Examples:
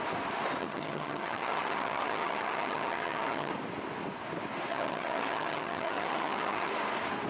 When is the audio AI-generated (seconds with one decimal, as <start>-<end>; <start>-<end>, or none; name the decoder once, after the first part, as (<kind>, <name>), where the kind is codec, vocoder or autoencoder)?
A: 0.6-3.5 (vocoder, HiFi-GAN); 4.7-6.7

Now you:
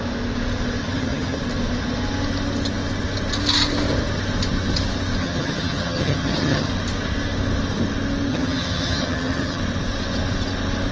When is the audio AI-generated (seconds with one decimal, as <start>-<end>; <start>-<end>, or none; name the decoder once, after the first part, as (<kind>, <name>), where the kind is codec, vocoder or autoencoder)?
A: 0.8-1.4 (vocoder, HiFi-GAN); 5.2-6.7; 8.3-9.6

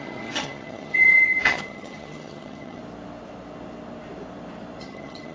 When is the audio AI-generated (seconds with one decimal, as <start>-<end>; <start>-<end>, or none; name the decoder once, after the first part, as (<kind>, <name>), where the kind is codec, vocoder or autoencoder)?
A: 0.0-2.8 (vocoder, HiFi-GAN); 4.8-5.3

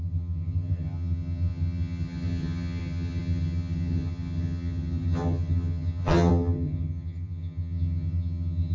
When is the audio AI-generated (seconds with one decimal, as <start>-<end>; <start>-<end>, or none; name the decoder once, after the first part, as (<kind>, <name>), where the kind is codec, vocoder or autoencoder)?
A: 0.0-8.7 (vocoder, HiFi-GAN)

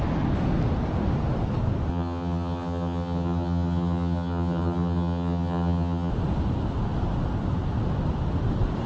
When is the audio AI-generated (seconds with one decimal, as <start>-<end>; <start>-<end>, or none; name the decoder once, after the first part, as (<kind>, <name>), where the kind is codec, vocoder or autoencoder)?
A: 1.9-6.1 (vocoder, HiFi-GAN)

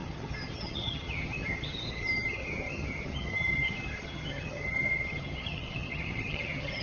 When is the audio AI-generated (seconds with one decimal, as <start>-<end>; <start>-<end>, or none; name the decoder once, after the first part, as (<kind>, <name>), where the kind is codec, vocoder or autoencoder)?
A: 0.0-6.8 (vocoder, HiFi-GAN)

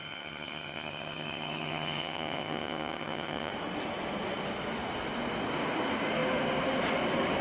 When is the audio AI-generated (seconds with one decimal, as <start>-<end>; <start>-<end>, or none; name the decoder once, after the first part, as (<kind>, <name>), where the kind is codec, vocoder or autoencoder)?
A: 0.0-3.5 (vocoder, HiFi-GAN)